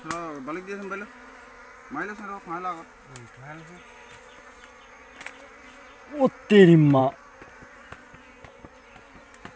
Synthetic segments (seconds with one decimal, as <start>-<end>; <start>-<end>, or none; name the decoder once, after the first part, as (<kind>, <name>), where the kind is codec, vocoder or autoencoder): 7.0-7.9 (vocoder, BigVGAN v2)